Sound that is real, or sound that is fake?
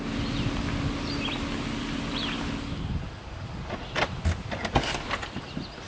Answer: real